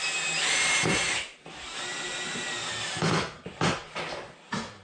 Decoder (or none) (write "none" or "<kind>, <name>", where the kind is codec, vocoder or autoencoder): none